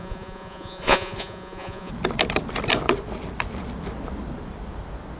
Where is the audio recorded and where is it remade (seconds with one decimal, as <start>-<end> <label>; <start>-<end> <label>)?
0.0-1.9 remade; 1.9-5.2 recorded